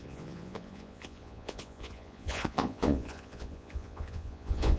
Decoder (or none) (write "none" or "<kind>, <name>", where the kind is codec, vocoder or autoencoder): vocoder, Vocos